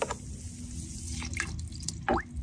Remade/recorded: recorded